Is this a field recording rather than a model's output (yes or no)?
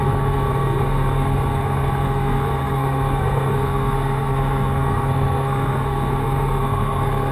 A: no